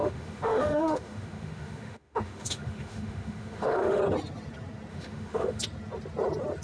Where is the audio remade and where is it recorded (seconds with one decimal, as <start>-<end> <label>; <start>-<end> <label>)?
0.0-4.0 remade; 4.0-4.9 recorded; 4.9-5.6 remade; 5.6-6.6 recorded